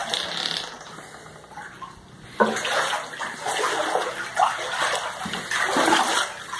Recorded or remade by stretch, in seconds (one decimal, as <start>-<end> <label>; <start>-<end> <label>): 0.0-6.6 recorded

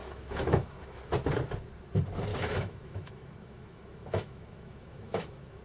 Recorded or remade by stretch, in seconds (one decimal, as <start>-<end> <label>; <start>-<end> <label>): 0.0-1.0 remade; 1.0-2.3 recorded; 2.3-5.6 remade